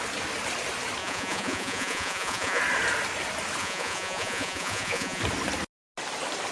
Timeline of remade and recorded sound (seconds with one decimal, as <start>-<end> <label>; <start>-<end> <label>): 0.0-1.0 recorded; 1.0-2.6 remade; 2.6-3.6 recorded; 3.6-5.2 remade; 5.2-6.5 recorded